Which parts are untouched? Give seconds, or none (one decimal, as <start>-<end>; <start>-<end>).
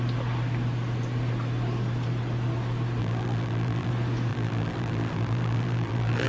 0.0-3.0; 3.9-4.3